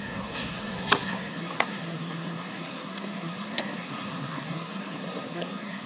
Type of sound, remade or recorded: remade